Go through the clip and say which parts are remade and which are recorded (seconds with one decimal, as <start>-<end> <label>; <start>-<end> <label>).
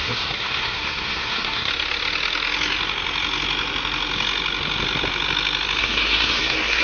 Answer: 0.0-1.7 remade; 1.7-5.8 recorded; 5.8-6.8 remade